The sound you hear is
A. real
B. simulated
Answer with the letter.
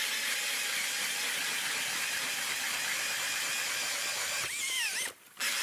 A